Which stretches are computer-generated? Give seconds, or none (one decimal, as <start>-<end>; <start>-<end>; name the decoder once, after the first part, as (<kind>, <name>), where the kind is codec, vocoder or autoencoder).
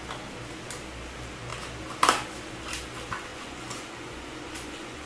3.3-5.1 (vocoder, Vocos)